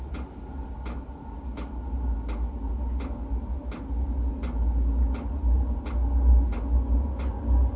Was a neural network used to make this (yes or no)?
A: no